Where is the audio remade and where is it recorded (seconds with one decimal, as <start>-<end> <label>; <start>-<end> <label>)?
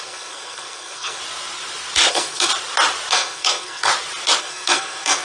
0.0-1.2 remade; 1.2-2.1 recorded; 2.1-2.5 remade; 2.5-3.1 recorded; 3.1-3.9 remade; 3.9-4.4 recorded; 4.4-5.2 remade